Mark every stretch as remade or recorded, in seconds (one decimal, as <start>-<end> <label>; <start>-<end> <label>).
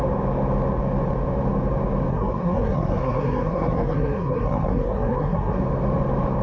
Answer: 0.0-2.1 recorded; 2.1-5.6 remade; 5.6-6.4 recorded